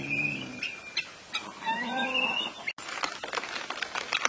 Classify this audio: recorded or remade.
recorded